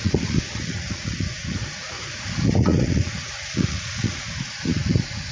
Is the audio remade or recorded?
remade